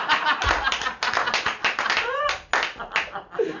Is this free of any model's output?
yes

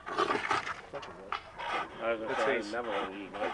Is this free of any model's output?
yes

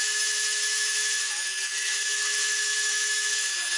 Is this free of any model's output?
no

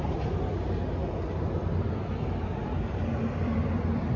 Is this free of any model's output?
no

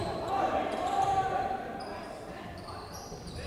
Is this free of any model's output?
no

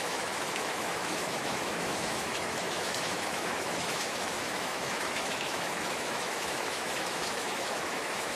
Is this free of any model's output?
no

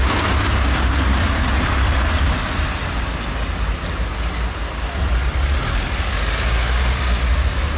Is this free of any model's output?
yes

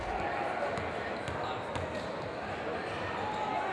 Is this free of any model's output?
yes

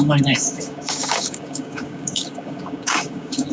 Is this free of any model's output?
no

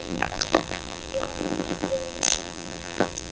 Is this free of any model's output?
no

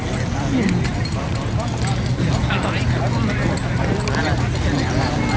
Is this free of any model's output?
yes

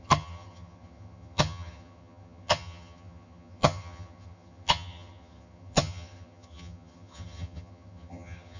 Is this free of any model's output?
no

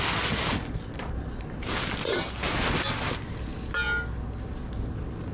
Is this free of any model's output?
yes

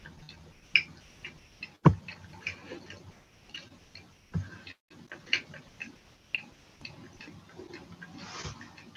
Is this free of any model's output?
yes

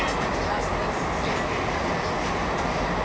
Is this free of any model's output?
yes